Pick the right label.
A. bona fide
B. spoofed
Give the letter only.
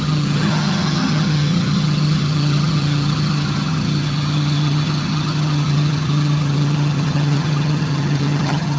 B